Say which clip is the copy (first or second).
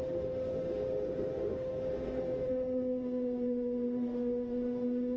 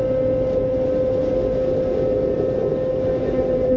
first